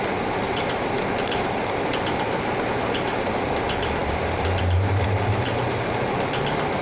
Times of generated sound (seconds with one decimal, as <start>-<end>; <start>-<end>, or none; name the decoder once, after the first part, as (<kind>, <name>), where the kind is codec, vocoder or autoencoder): 0.0-6.8 (vocoder, BigVGAN v2)